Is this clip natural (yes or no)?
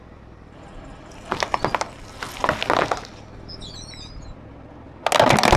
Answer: yes